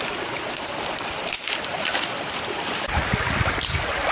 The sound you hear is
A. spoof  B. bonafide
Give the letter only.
B